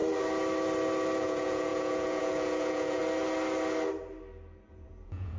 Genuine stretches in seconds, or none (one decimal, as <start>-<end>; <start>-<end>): 0.0-1.2; 3.0-4.7